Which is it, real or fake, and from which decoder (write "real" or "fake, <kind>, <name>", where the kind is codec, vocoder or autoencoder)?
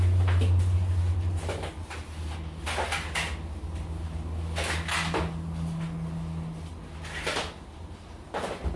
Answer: real